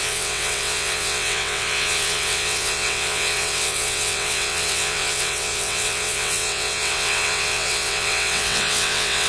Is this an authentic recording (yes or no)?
no